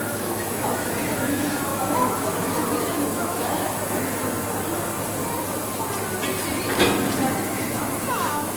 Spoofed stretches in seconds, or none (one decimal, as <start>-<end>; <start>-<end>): 0.0-3.8; 7.4-8.6